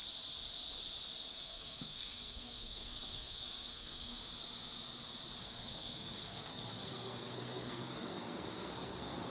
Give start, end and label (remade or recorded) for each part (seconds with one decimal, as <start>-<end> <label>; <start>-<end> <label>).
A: 0.0-1.3 recorded; 1.3-4.2 remade; 4.2-5.4 recorded; 5.4-9.3 remade